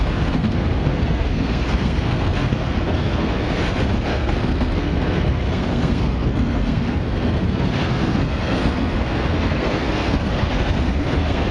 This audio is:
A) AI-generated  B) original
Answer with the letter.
A